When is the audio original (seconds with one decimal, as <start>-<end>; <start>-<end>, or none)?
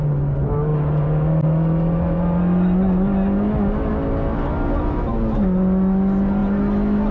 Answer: 0.0-7.1